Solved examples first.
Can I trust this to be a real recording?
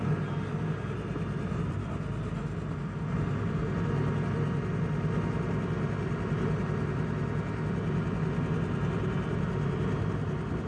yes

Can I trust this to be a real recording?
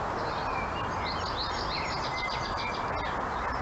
yes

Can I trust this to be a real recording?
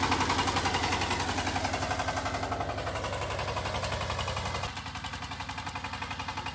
yes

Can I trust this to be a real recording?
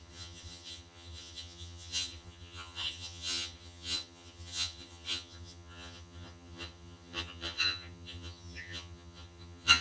no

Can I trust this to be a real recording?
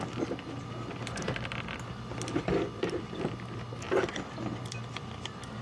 yes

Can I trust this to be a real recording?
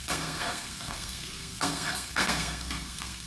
no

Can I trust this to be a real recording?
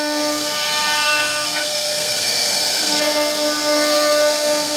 no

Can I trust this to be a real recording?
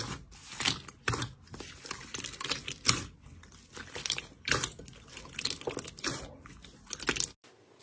yes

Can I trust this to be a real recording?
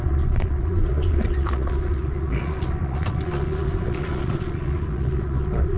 no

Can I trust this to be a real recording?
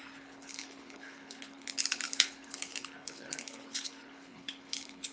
no